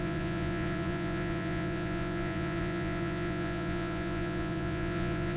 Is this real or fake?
fake